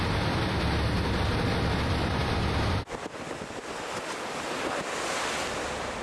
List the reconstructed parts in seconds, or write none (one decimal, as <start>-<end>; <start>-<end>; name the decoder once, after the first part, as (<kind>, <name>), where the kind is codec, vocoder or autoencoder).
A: none